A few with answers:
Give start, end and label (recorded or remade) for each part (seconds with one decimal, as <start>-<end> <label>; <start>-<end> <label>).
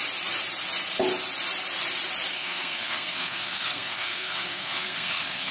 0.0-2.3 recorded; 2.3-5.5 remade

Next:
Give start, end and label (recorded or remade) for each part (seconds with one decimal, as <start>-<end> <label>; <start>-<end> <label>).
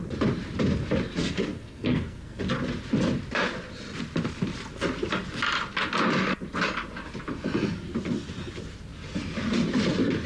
0.0-1.2 recorded; 1.2-2.4 remade; 2.4-10.3 recorded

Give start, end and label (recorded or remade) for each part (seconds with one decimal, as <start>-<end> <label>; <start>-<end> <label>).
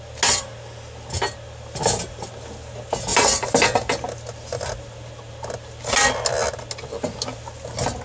0.0-8.0 recorded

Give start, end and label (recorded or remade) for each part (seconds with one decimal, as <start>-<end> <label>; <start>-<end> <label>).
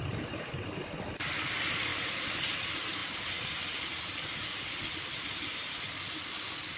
0.0-6.8 recorded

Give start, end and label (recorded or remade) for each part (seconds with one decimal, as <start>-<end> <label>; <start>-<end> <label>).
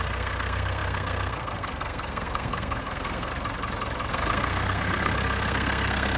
0.0-3.3 remade; 3.3-4.1 recorded; 4.1-6.2 remade